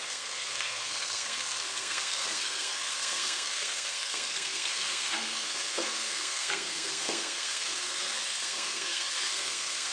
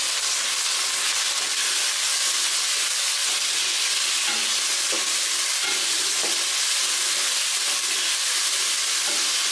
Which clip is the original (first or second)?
second